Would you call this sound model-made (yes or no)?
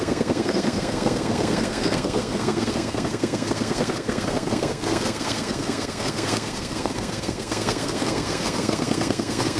yes